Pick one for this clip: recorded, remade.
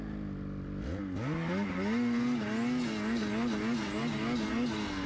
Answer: recorded